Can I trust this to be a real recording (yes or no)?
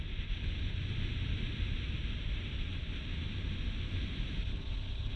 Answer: yes